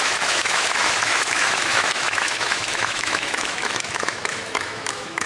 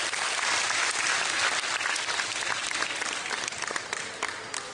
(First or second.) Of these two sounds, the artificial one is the first